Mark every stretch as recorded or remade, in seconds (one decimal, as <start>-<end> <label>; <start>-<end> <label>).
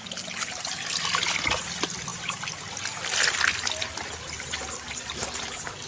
0.0-5.9 recorded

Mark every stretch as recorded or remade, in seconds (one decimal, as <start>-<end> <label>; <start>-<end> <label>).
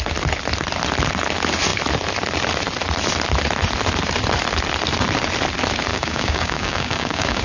0.0-5.9 recorded; 5.9-7.4 remade